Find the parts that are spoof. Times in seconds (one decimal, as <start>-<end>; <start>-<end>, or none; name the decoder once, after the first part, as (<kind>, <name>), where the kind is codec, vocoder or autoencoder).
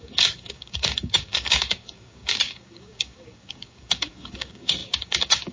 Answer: 0.0-5.5 (codec, DAC)